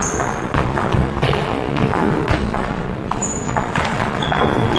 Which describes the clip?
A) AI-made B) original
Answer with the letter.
A